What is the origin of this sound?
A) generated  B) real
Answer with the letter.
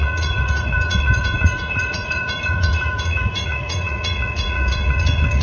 A